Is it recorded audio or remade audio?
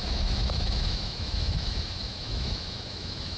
remade